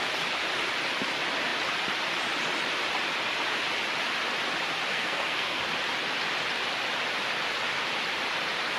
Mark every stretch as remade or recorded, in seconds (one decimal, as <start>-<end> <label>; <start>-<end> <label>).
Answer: 0.0-4.9 recorded; 4.9-5.6 remade; 5.6-8.8 recorded